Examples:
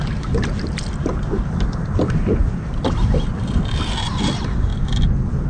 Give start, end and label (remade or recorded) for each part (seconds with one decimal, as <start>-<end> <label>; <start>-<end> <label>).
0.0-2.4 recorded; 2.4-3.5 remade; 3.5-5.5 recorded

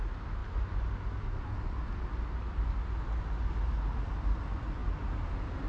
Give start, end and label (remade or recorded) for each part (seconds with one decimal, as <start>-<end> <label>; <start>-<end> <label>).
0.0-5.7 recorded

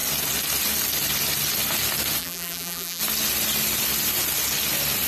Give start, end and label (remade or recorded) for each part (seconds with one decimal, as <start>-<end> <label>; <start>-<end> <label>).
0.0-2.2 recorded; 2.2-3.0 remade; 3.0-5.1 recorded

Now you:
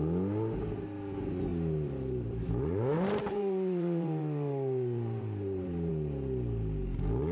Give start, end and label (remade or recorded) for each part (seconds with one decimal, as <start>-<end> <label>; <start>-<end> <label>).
0.0-1.5 recorded; 1.5-5.9 remade; 5.9-7.3 recorded

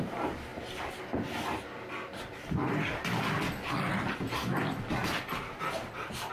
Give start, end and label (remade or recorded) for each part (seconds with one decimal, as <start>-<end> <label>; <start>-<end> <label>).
0.0-5.0 recorded; 5.0-6.3 remade

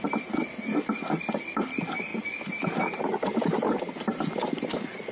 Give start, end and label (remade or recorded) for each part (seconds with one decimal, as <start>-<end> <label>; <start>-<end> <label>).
0.0-2.1 recorded; 2.1-3.9 remade; 3.9-5.1 recorded

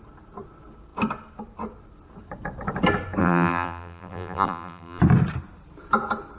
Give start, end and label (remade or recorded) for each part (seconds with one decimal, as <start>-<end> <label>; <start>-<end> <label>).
0.0-3.2 recorded; 3.2-5.0 remade; 5.0-6.4 recorded